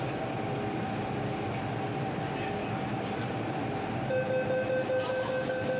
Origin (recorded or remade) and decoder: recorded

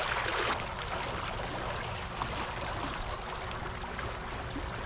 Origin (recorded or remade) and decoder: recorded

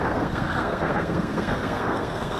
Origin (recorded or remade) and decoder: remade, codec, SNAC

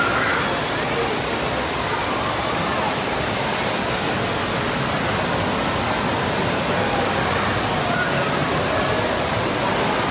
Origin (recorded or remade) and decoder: recorded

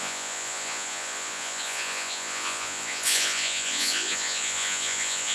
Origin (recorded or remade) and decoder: remade, vocoder, Vocos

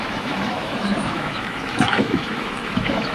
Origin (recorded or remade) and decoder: remade, autoencoder, DAC-VAE